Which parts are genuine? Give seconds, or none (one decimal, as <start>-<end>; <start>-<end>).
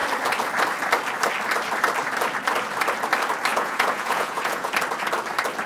0.0-3.5; 4.7-5.7